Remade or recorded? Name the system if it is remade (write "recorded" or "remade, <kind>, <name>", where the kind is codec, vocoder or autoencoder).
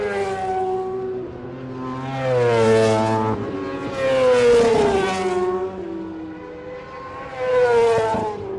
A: recorded